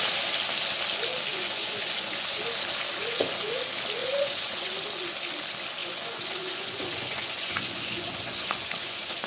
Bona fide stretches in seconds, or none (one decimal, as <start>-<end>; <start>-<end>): 0.0-1.3; 2.4-3.0; 3.6-4.0; 4.8-5.8